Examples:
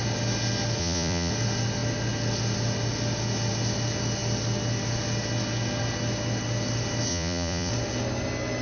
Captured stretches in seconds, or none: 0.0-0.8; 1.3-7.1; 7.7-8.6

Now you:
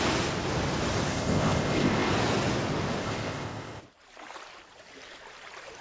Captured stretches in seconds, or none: 0.0-1.1; 2.1-3.0; 3.8-5.8

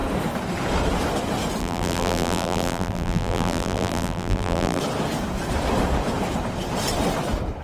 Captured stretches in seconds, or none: 0.0-1.6; 4.8-7.6